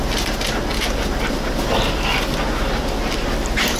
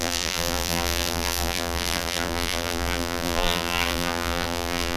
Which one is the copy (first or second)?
second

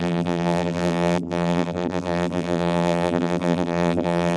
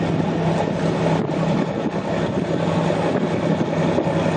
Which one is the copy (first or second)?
first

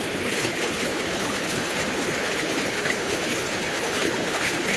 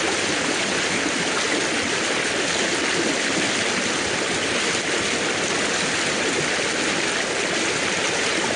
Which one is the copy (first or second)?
first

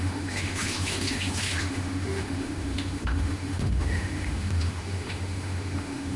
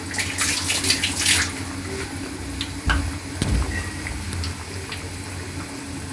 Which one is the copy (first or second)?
first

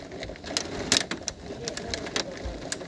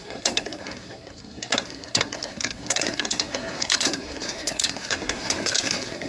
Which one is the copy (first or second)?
second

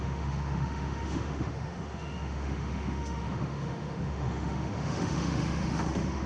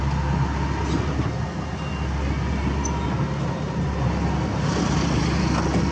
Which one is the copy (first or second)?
first